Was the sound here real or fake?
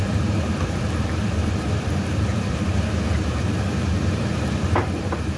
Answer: fake